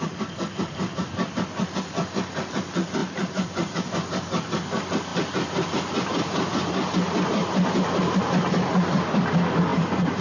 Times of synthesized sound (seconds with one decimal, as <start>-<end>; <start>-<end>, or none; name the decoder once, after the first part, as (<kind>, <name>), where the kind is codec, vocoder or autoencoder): 3.0-3.8 (vocoder, BigVGAN v2); 5.1-8.2; 9.7-10.2